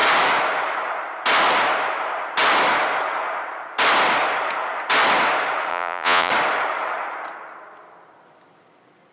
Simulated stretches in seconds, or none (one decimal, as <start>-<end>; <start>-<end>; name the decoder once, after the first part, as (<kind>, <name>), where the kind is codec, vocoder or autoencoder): 5.7-6.3 (vocoder, Vocos)